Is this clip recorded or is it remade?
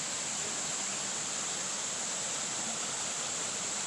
recorded